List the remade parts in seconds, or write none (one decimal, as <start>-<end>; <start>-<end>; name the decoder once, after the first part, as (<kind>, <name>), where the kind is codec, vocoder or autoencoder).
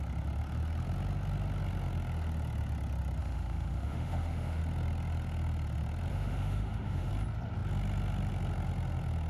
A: 3.2-4.6 (autoencoder, DAC-VAE); 6.1-7.1